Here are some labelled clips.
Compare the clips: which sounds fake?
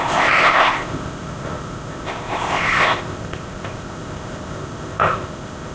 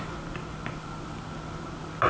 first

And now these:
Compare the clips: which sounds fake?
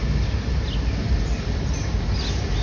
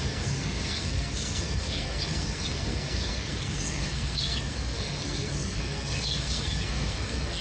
second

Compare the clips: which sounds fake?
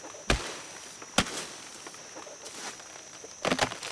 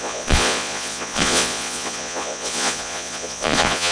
second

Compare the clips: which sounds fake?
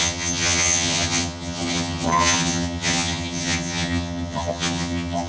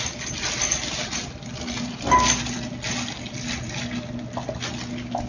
first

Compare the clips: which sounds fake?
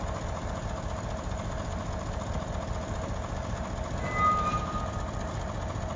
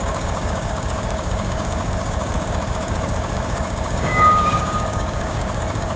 second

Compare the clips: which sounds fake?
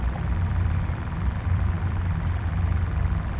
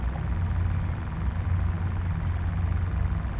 first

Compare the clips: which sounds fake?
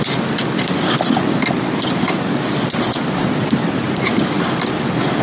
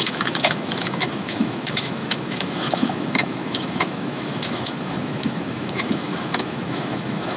second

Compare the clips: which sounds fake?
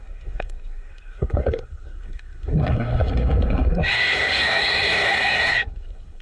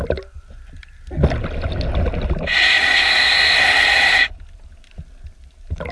first